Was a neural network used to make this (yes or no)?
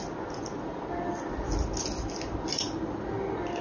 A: no